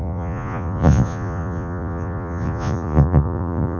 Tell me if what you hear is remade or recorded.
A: remade